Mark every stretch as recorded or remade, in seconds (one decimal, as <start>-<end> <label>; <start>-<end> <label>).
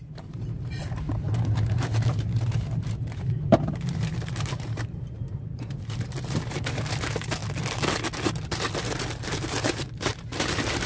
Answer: 0.0-7.4 remade; 7.4-8.8 recorded; 8.8-10.9 remade